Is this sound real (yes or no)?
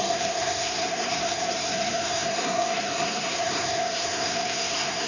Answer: no